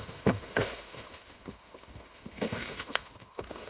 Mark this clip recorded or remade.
remade